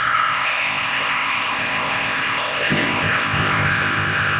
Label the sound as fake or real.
fake